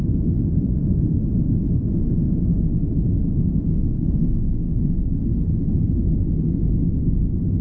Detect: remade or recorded recorded